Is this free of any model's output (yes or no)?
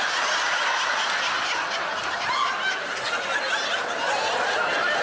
yes